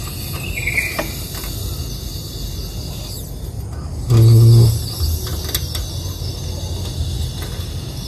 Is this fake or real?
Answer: real